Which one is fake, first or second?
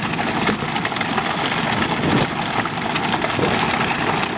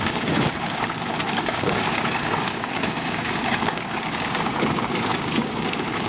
second